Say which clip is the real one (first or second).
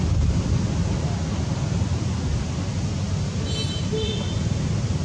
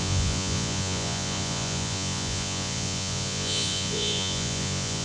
first